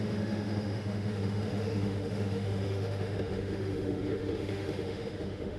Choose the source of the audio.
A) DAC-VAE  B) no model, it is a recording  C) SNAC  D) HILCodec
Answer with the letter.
A